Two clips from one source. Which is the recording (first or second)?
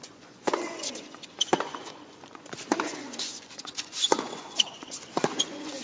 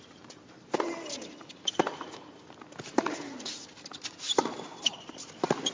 second